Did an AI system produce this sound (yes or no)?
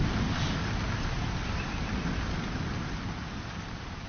no